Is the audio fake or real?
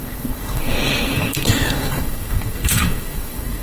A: fake